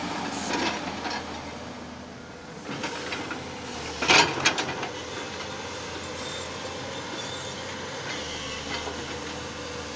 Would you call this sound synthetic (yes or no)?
no